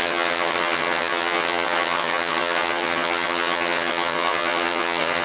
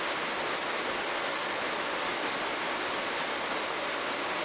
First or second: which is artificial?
first